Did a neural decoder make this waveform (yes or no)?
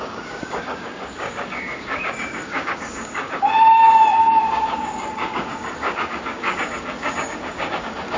yes